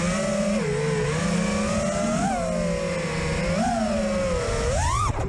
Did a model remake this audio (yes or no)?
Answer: no